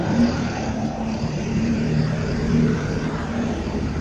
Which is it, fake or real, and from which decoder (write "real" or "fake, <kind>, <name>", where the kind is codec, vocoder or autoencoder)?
fake, vocoder, BigVGAN v2